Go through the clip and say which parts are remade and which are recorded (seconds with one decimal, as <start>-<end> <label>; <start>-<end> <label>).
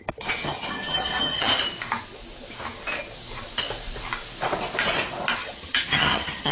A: 0.0-1.5 remade; 1.5-5.4 recorded; 5.4-6.5 remade